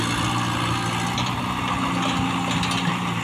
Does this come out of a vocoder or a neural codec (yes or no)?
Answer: no